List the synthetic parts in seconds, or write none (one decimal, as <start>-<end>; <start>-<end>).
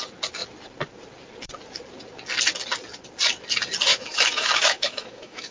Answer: 3.9-5.5